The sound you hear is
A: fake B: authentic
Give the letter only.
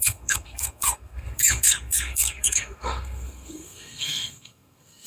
A